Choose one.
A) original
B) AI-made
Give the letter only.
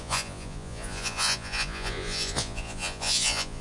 B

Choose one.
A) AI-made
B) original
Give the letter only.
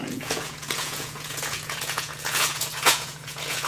A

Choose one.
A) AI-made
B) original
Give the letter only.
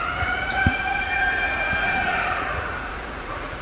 A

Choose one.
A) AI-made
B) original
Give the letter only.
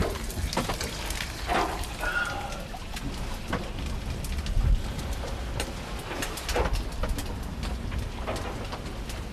B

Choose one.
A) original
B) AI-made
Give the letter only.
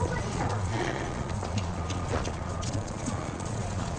B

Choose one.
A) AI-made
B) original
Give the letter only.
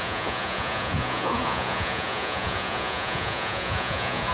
A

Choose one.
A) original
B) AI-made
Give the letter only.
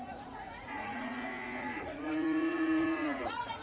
B